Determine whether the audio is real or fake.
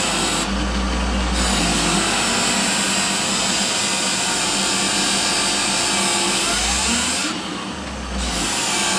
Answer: real